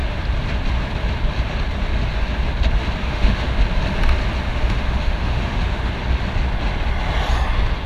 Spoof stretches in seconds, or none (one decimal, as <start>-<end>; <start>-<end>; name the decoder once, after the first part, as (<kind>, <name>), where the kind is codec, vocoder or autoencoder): 3.0-3.6 (autoencoder, DAC-VAE); 4.5-5.9